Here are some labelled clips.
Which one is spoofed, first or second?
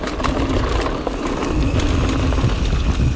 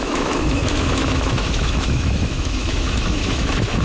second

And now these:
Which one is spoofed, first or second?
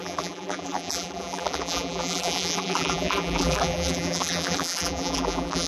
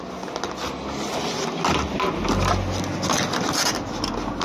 first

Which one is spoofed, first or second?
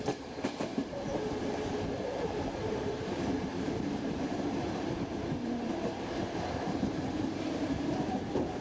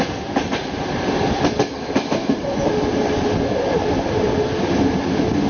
first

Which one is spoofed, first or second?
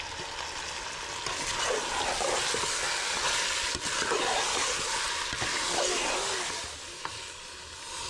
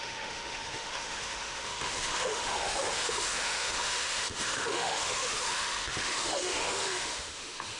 second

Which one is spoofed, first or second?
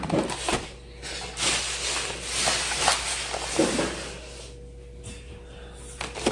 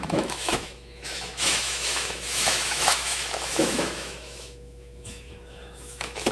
second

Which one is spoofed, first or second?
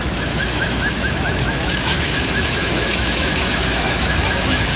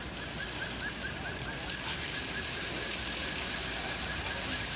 first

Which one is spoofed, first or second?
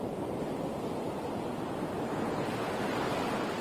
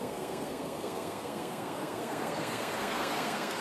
second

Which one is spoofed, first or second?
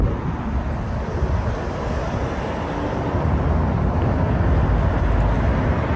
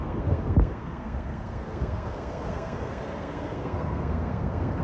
second